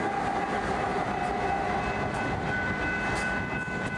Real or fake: real